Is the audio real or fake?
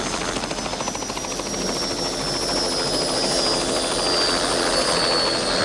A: real